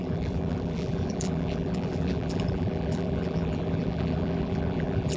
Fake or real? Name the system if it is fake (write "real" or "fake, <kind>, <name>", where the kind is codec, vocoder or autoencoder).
fake, vocoder, BigVGAN v2